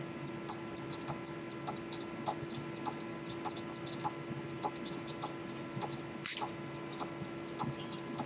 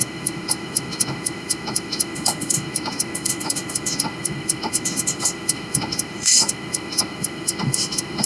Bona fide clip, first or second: first